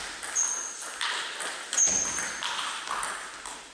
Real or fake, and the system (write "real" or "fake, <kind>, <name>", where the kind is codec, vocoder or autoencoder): real